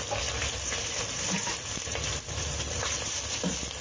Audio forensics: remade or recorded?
recorded